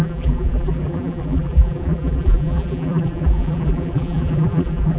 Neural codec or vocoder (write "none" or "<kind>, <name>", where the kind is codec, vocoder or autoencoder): vocoder, BigVGAN v2